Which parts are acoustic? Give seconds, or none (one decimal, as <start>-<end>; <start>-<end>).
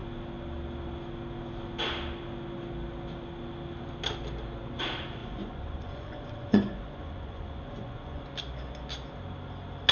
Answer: 0.0-5.2; 8.2-9.9